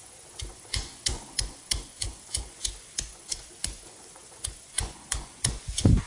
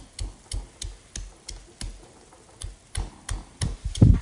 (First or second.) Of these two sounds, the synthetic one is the first